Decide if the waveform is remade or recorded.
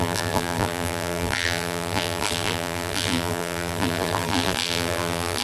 remade